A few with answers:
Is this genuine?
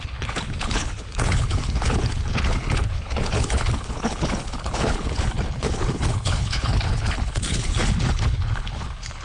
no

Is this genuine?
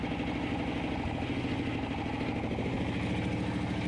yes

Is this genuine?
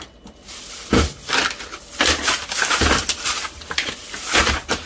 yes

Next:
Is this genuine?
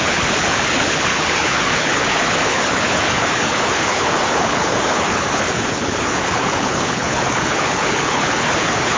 no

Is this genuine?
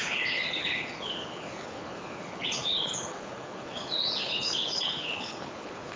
no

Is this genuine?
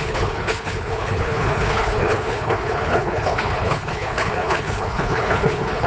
no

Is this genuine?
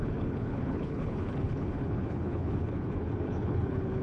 no